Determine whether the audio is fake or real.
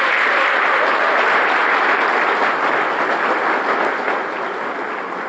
real